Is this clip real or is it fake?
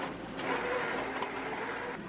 real